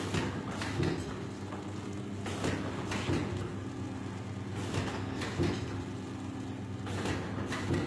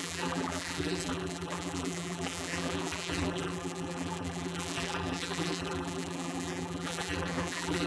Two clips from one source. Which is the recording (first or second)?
first